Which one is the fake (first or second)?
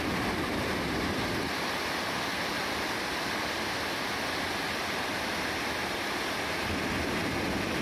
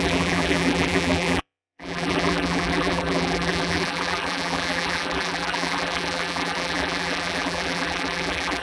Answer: second